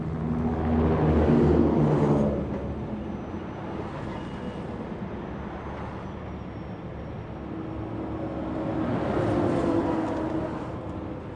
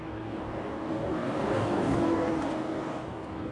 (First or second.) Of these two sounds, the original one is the first